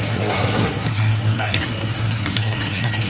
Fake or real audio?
fake